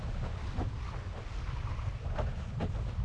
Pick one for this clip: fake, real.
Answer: real